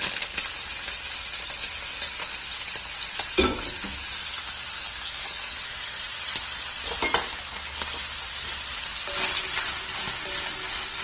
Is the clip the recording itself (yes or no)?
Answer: yes